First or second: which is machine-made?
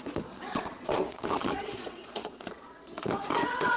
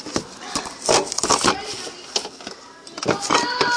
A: first